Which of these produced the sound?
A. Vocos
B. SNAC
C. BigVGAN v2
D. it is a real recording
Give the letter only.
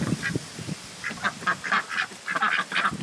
D